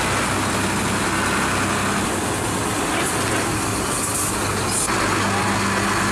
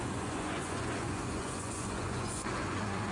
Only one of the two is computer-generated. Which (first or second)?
second